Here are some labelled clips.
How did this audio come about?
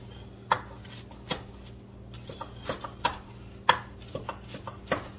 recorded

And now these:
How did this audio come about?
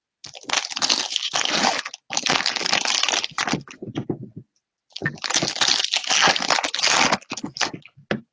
recorded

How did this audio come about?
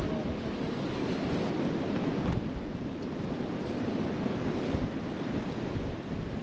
recorded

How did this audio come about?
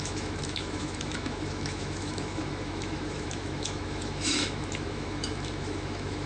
remade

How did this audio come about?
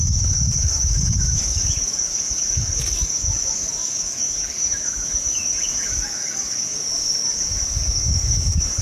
remade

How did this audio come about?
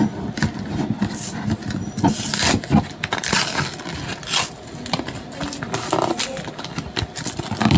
recorded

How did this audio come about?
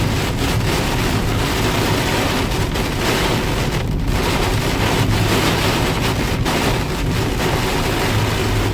recorded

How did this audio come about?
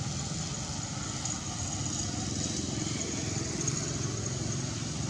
recorded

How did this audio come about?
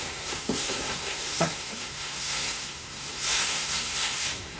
remade